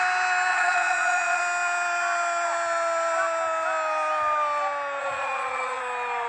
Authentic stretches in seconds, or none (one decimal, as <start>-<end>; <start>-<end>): 0.0-0.5; 1.4-5.0; 5.8-6.3